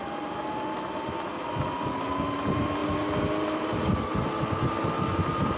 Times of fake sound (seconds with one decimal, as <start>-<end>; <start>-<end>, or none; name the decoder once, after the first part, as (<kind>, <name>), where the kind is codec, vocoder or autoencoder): none